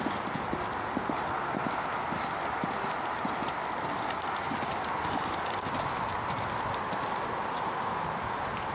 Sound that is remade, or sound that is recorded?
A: recorded